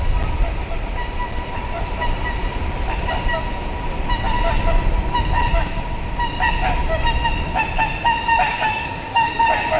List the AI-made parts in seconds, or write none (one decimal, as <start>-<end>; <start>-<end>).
8.5-9.4